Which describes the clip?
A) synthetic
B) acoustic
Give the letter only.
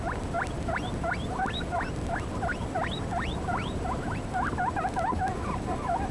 B